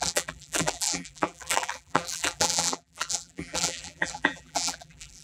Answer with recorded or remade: remade